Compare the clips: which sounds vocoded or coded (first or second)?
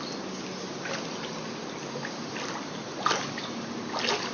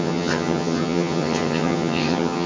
second